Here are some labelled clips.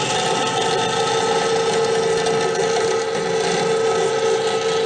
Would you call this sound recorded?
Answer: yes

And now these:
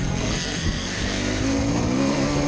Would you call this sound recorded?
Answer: no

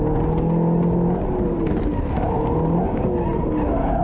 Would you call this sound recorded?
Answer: yes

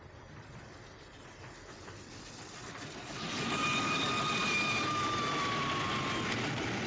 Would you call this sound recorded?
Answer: yes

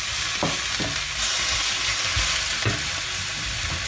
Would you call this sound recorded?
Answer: yes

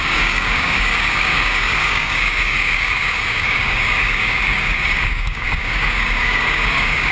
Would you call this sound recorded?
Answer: no